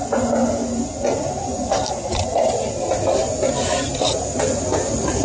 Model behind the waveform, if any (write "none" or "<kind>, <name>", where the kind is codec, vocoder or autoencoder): none